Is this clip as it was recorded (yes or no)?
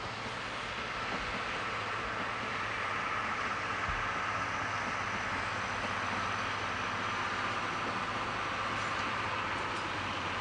yes